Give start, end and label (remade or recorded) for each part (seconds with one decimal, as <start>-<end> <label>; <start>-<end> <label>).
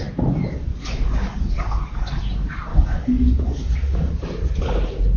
0.0-0.7 recorded; 0.7-2.2 remade; 2.2-2.7 recorded; 2.7-4.1 remade; 4.1-5.2 recorded